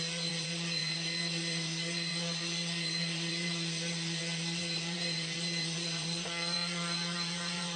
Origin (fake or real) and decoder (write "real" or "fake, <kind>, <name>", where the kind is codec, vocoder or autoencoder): fake, vocoder, Vocos